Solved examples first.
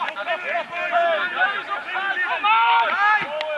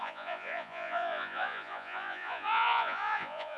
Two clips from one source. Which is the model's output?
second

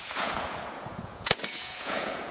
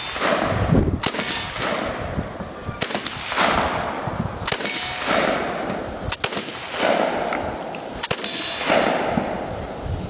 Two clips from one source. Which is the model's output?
first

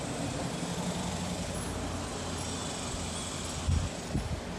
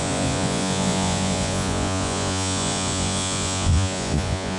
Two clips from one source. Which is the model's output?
second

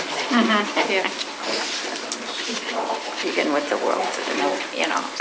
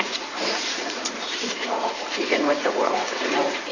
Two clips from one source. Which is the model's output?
second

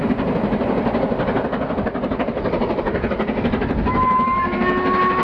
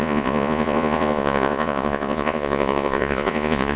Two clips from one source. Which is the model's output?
second